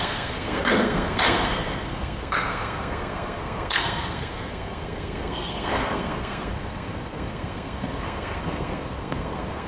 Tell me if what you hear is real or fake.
fake